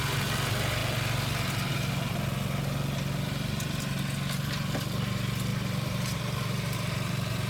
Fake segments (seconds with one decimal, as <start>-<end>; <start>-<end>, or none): 5.5-7.5